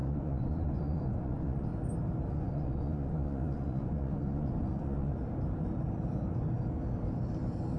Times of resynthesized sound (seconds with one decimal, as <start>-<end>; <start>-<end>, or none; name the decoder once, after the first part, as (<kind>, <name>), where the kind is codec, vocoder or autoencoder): 0.0-1.7 (vocoder, Vocos); 2.3-5.1